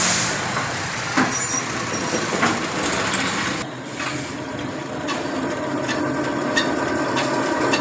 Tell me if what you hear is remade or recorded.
recorded